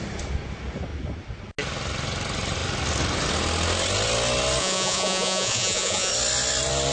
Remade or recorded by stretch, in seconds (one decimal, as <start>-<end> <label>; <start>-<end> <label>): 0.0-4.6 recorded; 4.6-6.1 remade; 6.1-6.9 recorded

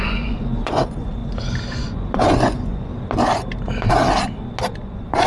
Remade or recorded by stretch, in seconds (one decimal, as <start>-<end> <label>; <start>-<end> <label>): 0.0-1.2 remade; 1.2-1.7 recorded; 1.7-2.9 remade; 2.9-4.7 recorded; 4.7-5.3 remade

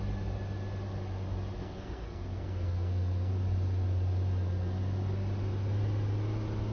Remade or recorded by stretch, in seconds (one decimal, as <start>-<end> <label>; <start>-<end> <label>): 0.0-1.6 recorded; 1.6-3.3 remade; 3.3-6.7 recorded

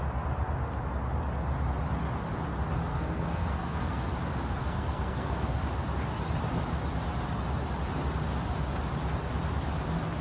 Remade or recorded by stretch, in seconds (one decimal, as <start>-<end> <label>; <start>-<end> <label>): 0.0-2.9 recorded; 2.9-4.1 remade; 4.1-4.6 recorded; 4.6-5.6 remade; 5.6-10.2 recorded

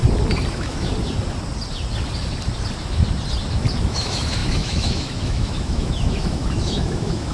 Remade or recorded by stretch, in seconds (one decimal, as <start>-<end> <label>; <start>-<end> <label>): 0.0-0.5 recorded; 0.5-0.9 remade; 0.9-3.8 recorded; 3.8-7.3 remade

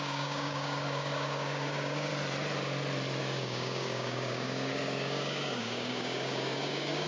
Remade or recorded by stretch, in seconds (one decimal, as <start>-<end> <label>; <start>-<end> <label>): 0.0-2.1 remade; 2.1-3.2 recorded; 3.2-7.1 remade